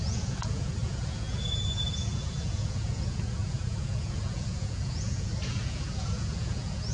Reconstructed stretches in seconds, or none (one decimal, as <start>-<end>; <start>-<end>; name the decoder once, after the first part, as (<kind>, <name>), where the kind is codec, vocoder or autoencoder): 0.0-6.9 (vocoder, Vocos)